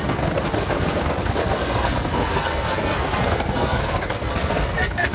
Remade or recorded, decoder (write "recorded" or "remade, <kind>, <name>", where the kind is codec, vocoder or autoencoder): remade, codec, SNAC